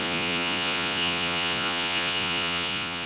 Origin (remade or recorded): remade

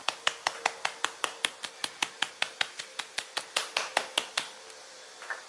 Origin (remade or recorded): recorded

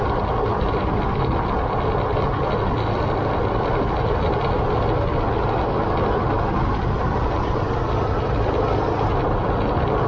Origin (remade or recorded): recorded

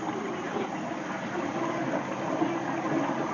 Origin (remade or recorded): recorded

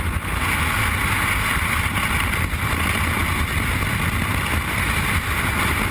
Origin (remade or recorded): recorded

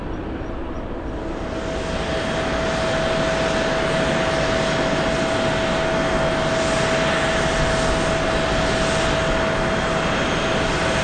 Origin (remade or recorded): recorded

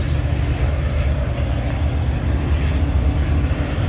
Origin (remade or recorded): recorded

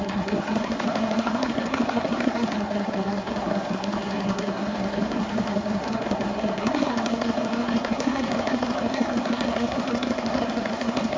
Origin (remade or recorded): remade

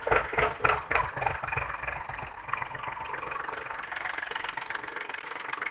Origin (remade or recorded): remade